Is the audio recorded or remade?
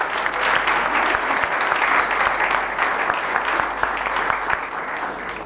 recorded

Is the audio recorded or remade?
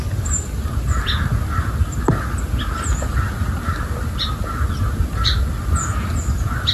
recorded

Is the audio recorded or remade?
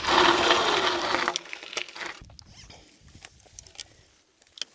recorded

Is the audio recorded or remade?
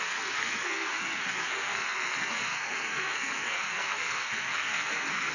remade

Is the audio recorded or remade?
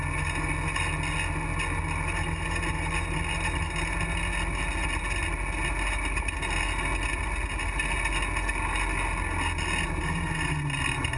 recorded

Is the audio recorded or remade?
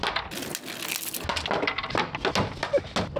recorded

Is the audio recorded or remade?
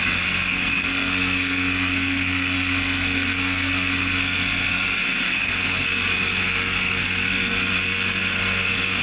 remade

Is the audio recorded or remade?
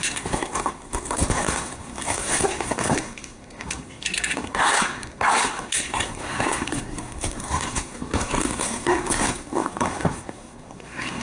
remade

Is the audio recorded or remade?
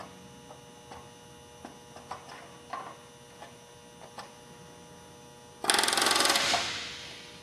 recorded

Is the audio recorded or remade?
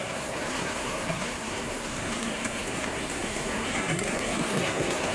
remade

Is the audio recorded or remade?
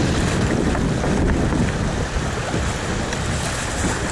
recorded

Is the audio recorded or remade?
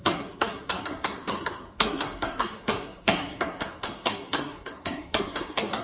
remade